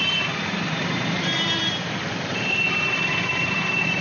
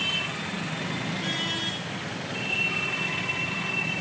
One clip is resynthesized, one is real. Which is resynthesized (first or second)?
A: first